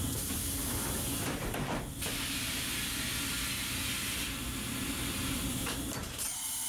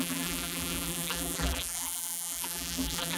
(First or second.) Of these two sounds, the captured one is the first